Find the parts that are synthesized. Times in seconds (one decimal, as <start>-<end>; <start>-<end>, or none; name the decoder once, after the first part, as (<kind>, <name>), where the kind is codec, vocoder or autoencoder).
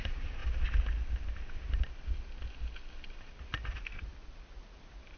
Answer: 0.0-0.4 (vocoder, BigVGAN v2); 3.5-4.1; 4.6-5.2